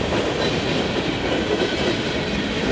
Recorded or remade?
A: recorded